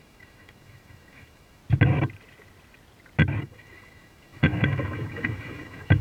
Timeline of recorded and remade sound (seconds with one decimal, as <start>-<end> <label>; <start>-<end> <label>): 0.0-1.6 remade; 1.6-3.4 recorded; 3.4-6.0 remade